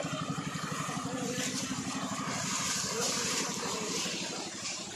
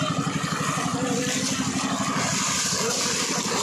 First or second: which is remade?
first